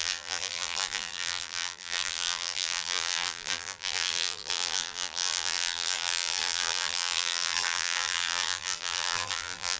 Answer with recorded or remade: remade